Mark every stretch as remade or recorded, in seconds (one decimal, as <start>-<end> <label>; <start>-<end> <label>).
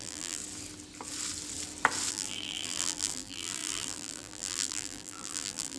0.0-0.4 remade; 0.4-2.1 recorded; 2.1-5.8 remade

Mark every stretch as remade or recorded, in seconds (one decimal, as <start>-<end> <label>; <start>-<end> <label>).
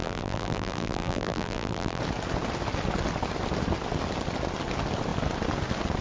0.0-2.0 remade; 2.0-6.0 recorded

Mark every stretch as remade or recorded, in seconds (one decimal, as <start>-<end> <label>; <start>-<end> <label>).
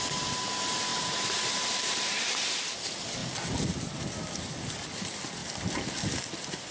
0.0-0.9 recorded; 0.9-2.2 remade; 2.2-6.7 recorded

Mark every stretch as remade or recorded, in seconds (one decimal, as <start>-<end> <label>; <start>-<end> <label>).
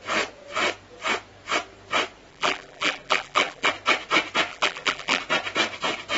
0.0-2.3 recorded; 2.3-3.7 remade; 3.7-4.5 recorded; 4.5-5.2 remade; 5.2-6.2 recorded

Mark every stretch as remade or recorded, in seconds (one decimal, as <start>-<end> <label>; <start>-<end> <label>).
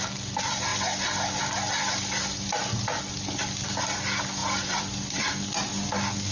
0.0-2.6 recorded; 2.6-3.8 remade; 3.8-4.4 recorded; 4.4-5.6 remade; 5.6-6.3 recorded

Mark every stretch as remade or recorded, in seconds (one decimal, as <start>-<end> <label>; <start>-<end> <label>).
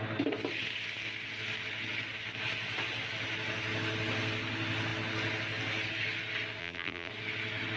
0.0-6.6 recorded; 6.6-7.1 remade; 7.1-7.8 recorded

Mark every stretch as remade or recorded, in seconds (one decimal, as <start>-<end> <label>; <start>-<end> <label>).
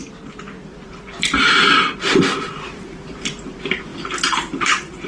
0.0-3.1 remade; 3.1-3.9 recorded; 3.9-5.1 remade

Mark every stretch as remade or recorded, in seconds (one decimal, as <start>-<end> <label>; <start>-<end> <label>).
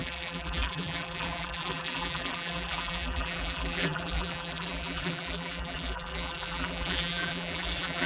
0.0-8.1 remade